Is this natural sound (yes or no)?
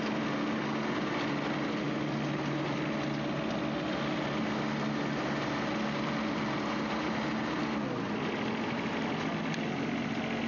yes